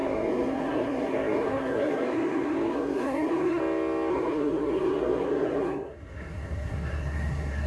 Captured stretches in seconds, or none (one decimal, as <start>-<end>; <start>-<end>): 3.6-4.1